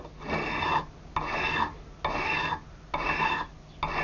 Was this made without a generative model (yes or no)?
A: yes